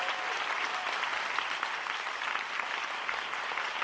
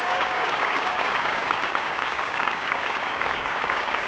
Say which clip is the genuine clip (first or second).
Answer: first